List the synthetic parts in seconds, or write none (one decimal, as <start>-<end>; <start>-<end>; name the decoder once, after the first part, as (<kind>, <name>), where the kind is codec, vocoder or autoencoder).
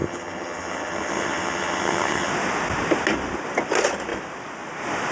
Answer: 0.0-2.3 (vocoder, HiFi-GAN)